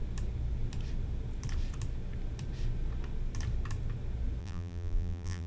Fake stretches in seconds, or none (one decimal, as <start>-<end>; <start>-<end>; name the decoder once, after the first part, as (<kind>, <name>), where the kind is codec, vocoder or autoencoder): 4.4-5.5 (vocoder, BigVGAN v2)